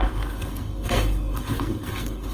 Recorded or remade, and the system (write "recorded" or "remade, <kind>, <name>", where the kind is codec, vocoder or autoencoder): remade, codec, SNAC